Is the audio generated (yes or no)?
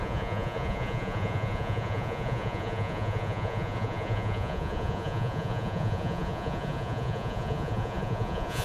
yes